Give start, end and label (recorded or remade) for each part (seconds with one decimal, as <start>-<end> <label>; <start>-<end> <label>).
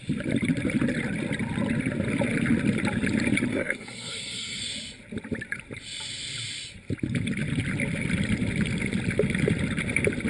0.0-3.5 recorded; 3.5-4.6 remade; 4.6-10.3 recorded